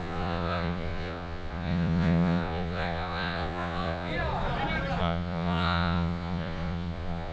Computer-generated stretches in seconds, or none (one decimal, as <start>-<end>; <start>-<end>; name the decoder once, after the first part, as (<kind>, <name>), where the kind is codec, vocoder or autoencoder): 0.0-4.1 (vocoder, Vocos); 5.0-7.3